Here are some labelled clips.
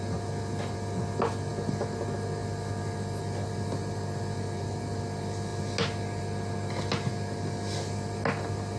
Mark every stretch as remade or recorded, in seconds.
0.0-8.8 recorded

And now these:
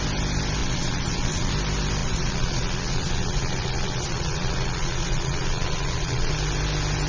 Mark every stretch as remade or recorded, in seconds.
0.0-0.6 recorded; 0.6-1.5 remade; 1.5-2.0 recorded; 2.0-6.3 remade; 6.3-7.1 recorded

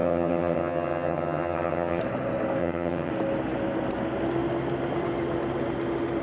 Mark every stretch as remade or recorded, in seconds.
0.0-2.0 remade; 2.0-2.6 recorded; 2.6-3.1 remade; 3.1-6.2 recorded

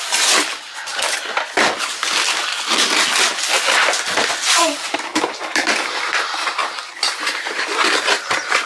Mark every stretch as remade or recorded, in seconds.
0.0-5.1 recorded; 5.1-5.6 remade; 5.6-6.6 recorded; 6.6-7.4 remade; 7.4-8.7 recorded